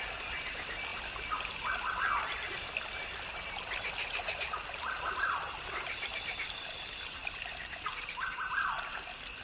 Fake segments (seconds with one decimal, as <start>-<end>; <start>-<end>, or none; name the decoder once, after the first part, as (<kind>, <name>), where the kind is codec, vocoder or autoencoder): none

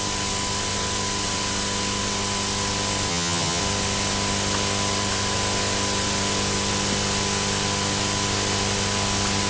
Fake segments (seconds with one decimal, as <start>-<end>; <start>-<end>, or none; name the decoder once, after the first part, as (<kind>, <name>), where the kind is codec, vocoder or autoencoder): 3.1-3.6 (vocoder, HiFi-GAN)

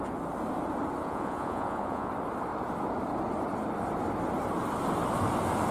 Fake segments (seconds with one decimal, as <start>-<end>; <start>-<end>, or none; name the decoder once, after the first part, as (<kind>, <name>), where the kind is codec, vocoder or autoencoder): 1.0-2.1 (vocoder, Vocos)

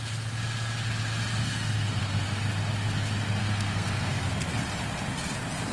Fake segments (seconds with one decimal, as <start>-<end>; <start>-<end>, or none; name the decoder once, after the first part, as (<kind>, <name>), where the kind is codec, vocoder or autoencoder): 1.4-2.0 (codec, SNAC); 3.4-4.6

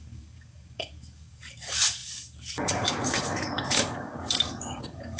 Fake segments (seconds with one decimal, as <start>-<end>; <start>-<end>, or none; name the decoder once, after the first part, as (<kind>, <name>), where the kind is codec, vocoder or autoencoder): 0.0-5.2 (codec, DAC)